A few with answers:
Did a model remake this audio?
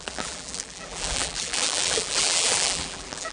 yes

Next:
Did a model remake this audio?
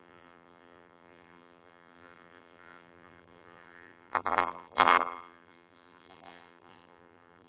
yes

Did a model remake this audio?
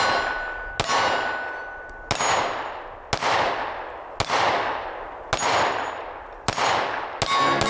no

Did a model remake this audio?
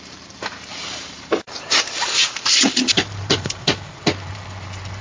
yes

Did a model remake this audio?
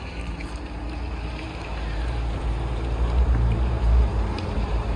yes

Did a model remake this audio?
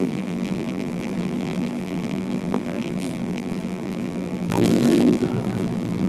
yes